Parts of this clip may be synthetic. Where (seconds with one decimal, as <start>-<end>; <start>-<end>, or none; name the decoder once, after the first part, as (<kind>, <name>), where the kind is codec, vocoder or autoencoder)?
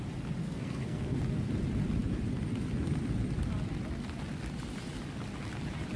0.4-1.2 (codec, SNAC)